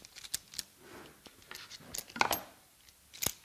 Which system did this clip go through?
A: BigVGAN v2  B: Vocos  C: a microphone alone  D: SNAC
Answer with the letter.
C